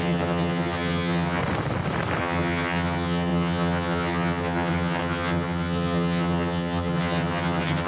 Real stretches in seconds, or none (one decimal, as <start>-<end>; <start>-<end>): 1.4-2.2